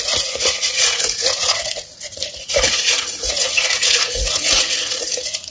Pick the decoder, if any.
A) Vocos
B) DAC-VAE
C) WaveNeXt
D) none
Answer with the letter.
A